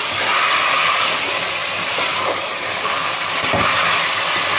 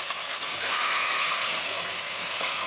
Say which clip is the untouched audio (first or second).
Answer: first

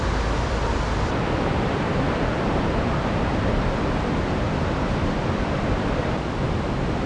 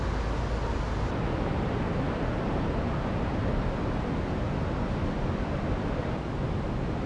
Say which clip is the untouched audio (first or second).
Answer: second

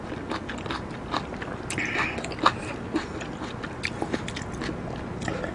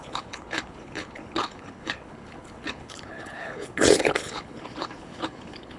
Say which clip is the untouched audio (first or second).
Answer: first